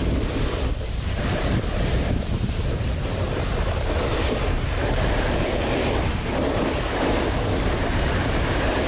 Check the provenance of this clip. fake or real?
fake